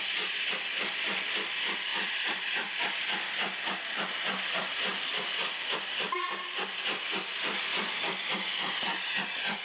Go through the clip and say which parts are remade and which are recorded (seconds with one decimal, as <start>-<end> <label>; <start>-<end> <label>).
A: 0.0-1.9 recorded; 1.9-2.7 remade; 2.7-4.9 recorded; 4.9-5.4 remade; 5.4-9.6 recorded